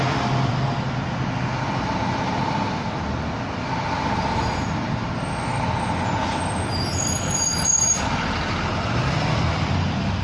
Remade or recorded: recorded